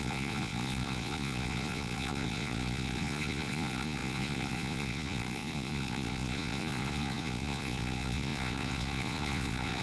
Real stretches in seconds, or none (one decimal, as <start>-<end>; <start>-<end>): none